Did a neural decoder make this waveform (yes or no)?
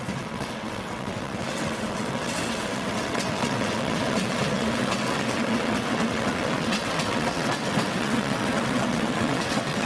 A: yes